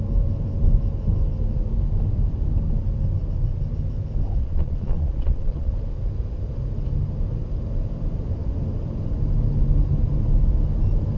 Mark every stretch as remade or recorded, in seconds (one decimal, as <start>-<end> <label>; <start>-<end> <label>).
0.0-4.4 recorded; 4.4-5.7 remade; 5.7-11.2 recorded